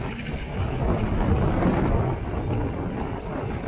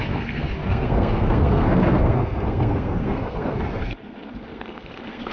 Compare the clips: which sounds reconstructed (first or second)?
second